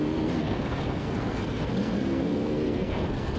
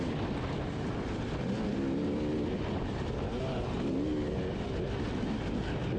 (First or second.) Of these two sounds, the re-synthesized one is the first